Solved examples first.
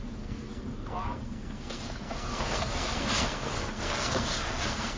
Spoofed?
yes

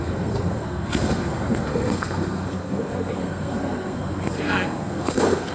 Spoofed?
yes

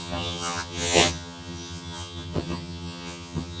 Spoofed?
yes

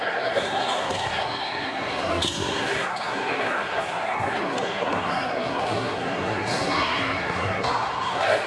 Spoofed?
yes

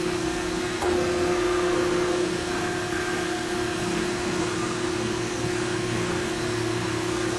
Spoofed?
yes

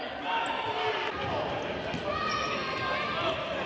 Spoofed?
no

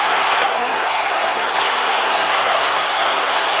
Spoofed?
yes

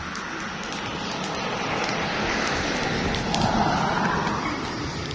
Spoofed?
no